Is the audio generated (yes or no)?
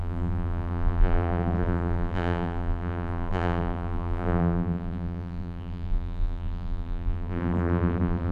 yes